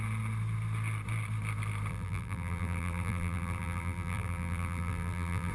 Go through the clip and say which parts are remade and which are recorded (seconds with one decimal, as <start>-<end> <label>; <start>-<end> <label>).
0.0-1.9 recorded; 1.9-5.5 remade